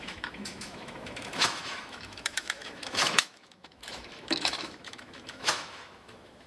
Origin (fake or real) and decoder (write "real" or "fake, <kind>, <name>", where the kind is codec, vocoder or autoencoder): fake, autoencoder, DAC-VAE